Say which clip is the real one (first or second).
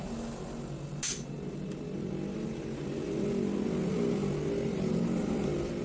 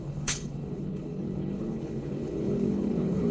first